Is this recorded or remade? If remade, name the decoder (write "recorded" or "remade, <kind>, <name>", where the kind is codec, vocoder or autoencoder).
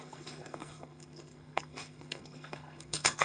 remade, codec, SNAC